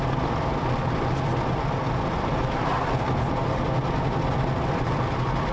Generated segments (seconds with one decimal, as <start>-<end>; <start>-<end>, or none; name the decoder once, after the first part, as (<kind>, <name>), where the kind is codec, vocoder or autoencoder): none